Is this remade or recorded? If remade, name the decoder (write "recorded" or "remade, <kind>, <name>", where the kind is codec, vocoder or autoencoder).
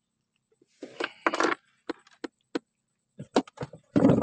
recorded